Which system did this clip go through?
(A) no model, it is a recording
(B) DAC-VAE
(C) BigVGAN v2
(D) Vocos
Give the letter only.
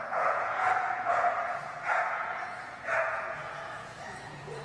D